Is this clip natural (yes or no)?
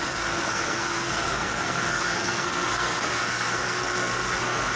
no